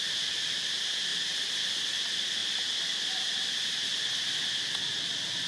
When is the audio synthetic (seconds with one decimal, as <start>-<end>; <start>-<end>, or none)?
none